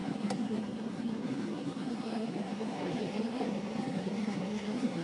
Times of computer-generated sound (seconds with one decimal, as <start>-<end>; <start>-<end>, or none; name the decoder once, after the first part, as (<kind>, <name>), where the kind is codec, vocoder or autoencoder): 0.0-5.0 (codec, SNAC)